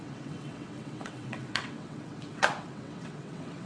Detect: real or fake fake